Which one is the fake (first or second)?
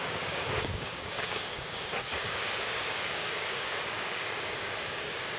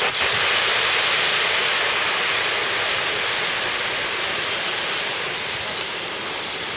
first